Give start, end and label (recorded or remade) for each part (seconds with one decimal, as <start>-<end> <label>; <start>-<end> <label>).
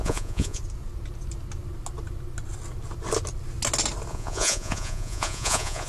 0.0-0.6 remade; 0.6-4.1 recorded; 4.1-5.9 remade